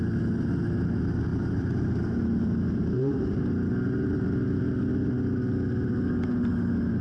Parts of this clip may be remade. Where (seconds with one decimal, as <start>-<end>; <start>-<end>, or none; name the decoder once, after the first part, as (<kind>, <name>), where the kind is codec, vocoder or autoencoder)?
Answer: 1.3-3.4 (vocoder, BigVGAN v2)